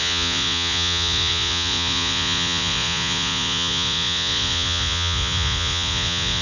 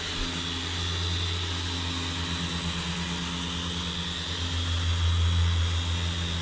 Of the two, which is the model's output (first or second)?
first